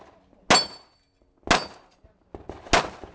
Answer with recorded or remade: recorded